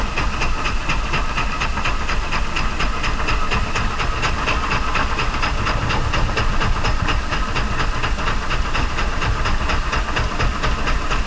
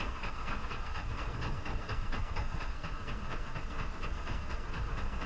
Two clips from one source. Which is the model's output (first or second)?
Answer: second